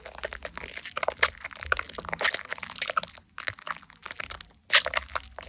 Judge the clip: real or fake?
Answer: real